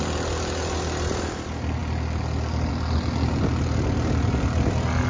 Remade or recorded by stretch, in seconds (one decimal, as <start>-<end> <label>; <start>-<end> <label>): 0.0-5.1 recorded

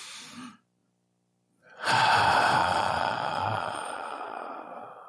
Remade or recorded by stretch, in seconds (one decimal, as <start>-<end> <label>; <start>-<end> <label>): 0.0-2.6 recorded; 2.6-5.1 remade